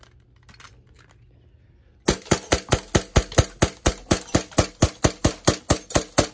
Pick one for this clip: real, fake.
real